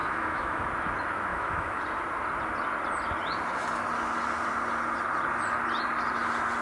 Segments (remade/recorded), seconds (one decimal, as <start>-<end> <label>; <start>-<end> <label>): 0.0-0.6 remade; 0.6-1.3 recorded; 1.3-1.8 remade; 1.8-6.6 recorded